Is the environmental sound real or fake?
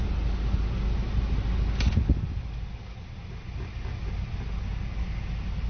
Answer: real